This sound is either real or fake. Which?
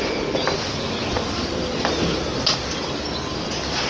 real